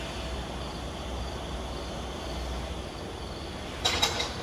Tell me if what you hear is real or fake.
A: real